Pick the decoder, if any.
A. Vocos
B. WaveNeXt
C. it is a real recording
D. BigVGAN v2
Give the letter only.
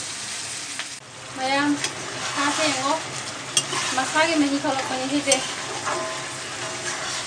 C